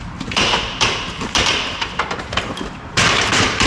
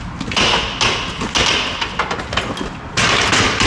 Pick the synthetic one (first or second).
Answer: first